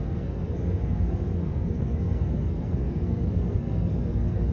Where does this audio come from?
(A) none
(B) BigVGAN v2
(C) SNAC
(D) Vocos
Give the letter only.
C